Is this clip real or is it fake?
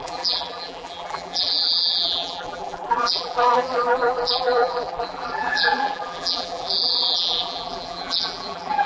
fake